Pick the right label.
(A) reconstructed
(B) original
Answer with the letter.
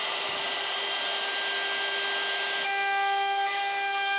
B